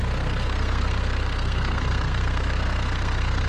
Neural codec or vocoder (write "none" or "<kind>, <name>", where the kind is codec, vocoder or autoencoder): codec, SNAC